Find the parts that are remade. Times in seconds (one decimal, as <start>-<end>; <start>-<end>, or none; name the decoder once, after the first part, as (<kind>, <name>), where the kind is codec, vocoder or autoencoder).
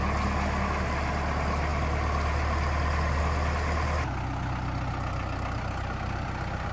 none